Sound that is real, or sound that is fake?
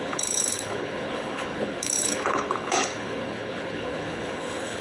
fake